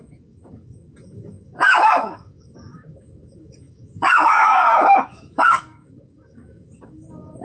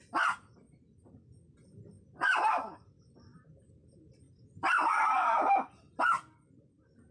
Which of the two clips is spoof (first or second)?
first